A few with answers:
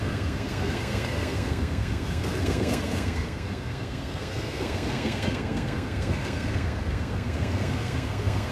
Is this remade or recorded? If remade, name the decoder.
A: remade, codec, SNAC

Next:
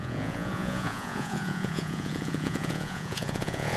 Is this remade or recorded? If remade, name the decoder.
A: remade, vocoder, Vocos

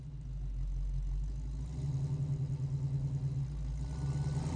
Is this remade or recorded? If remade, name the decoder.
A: recorded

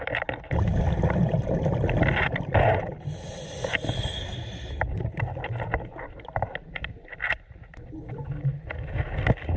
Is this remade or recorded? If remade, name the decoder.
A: recorded